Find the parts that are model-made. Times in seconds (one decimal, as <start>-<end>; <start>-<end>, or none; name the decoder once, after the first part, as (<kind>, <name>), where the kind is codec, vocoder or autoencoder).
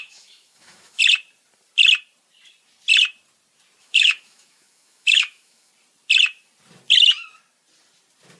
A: 0.0-1.0 (autoencoder, DAC-VAE); 3.8-5.7